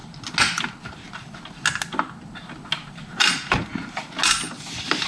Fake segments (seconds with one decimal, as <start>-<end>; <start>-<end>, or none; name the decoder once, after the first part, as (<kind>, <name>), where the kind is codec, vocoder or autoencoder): none